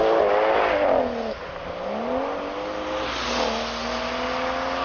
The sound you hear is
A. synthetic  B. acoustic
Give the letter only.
B